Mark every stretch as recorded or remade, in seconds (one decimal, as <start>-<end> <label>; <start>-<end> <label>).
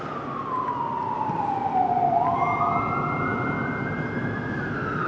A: 0.0-5.1 recorded